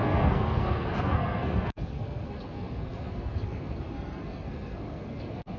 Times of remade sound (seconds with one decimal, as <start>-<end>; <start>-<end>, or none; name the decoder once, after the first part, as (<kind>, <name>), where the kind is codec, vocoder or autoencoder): 0.0-5.6 (codec, SNAC)